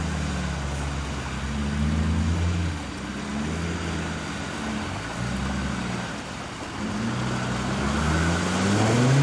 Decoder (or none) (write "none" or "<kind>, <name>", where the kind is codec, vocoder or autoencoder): none